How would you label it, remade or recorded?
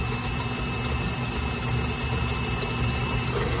recorded